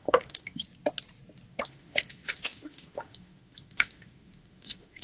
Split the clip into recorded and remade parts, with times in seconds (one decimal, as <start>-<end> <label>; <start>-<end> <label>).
0.0-0.6 remade; 0.6-1.5 recorded; 1.5-5.0 remade